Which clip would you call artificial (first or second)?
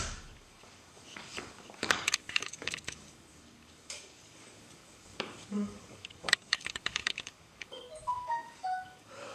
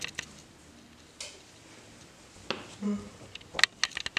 first